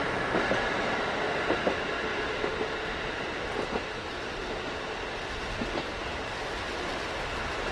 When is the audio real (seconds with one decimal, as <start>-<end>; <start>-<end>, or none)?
0.0-7.7